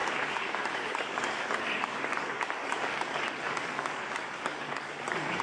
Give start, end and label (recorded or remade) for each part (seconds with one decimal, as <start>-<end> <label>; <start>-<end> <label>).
0.0-5.4 remade